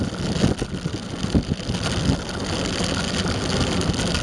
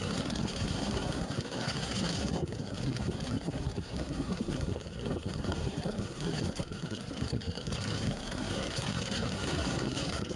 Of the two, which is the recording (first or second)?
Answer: first